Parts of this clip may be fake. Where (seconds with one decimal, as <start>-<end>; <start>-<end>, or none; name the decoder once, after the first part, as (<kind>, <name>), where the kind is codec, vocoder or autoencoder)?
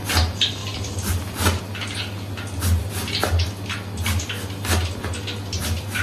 0.6-1.6 (vocoder, BigVGAN v2)